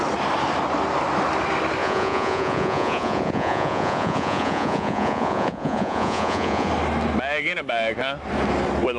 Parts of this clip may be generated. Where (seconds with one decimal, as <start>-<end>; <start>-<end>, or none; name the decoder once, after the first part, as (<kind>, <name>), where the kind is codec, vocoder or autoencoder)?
1.8-6.7 (vocoder, Vocos)